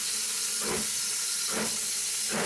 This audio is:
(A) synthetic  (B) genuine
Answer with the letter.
B